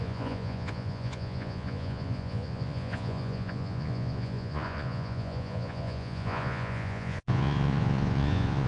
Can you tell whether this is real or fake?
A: fake